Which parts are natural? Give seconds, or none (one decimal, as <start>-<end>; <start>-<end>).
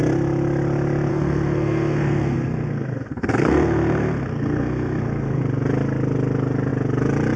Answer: 0.0-1.1; 5.4-7.4